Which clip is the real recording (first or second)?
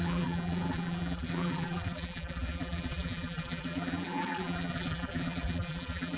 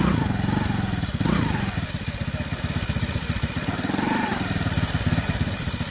second